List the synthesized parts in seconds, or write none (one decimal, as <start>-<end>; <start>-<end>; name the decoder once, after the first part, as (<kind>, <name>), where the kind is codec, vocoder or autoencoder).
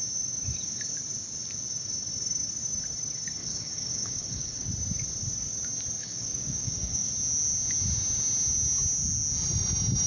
3.4-4.7 (codec, DAC); 6.0-7.1